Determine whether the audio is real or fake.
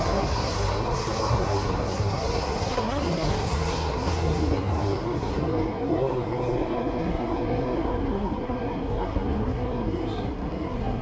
fake